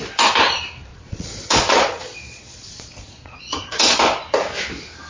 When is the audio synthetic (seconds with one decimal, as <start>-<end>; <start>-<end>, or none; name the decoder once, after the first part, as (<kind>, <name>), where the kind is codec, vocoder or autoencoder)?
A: 0.9-4.0 (vocoder, Vocos)